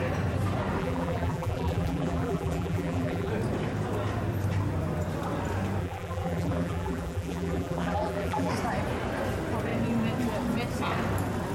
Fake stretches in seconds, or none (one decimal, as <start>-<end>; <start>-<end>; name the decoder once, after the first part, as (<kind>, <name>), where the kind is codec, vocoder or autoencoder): 0.8-3.3 (vocoder, BigVGAN v2); 5.8-8.5